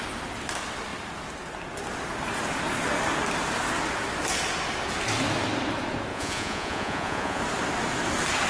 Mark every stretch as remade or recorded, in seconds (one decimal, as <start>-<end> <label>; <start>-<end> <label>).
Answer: 0.0-6.1 recorded; 6.1-7.4 remade; 7.4-8.5 recorded